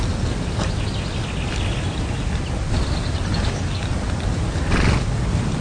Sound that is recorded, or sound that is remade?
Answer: recorded